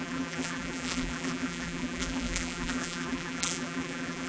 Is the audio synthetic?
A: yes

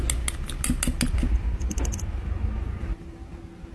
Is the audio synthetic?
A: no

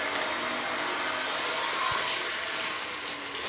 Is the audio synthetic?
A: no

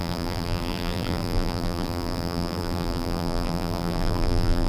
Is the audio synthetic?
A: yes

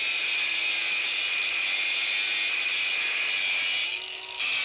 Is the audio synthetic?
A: no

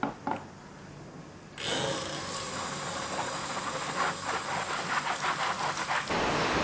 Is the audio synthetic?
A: no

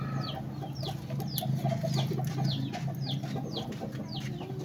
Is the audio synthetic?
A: no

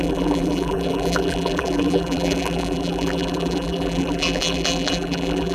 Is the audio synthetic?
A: yes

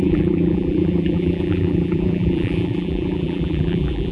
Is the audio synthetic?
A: yes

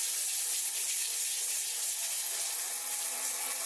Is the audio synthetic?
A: no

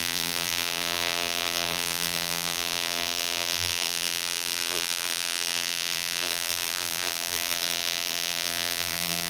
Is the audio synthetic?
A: yes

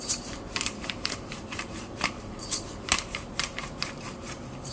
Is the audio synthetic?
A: yes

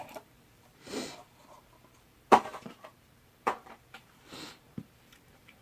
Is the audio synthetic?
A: yes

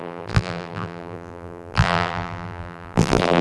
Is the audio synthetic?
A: yes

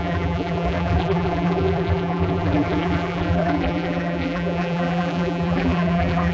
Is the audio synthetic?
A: yes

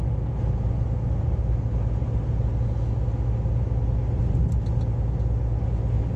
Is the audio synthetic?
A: no